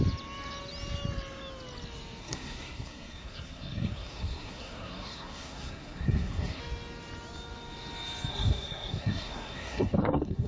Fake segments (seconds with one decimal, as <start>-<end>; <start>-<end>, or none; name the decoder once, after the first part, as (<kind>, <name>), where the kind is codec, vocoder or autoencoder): 2.2-6.6 (codec, SNAC); 8.3-10.5